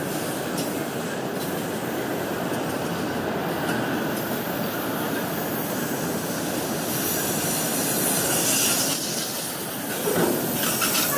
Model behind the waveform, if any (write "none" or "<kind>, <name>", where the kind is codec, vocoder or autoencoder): none